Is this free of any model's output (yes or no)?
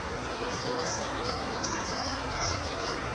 no